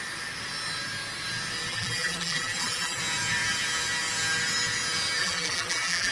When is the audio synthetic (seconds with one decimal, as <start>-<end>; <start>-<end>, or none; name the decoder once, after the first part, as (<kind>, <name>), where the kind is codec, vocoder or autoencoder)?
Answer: 1.7-3.0 (vocoder, BigVGAN v2); 5.2-6.1

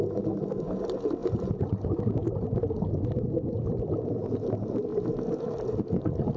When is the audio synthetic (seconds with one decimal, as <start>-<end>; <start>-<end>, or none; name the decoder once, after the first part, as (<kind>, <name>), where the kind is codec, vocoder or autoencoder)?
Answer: none

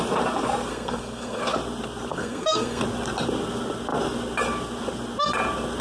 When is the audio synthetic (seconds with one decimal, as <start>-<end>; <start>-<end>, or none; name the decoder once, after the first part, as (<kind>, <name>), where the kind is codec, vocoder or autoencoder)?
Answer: 0.7-1.4 (codec, SNAC); 2.1-2.8

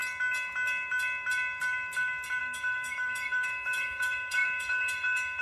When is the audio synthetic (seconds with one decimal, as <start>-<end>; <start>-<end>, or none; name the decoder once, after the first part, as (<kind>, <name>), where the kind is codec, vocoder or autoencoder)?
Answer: 2.4-5.4 (autoencoder, DAC-VAE)